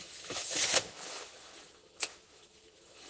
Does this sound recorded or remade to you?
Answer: remade